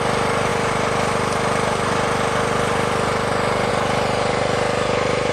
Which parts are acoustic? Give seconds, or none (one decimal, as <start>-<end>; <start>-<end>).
0.0-5.3